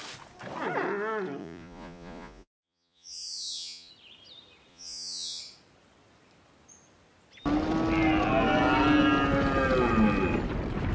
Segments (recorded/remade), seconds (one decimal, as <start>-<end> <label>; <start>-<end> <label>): 0.0-1.4 recorded; 1.4-3.9 remade; 3.9-4.7 recorded; 4.7-5.4 remade; 5.4-10.9 recorded